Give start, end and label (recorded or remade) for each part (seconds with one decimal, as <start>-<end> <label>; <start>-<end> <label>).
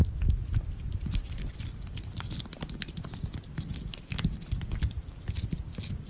0.0-6.1 recorded